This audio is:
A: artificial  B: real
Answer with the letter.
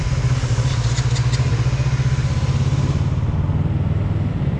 B